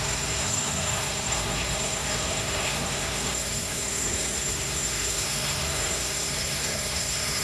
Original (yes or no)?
no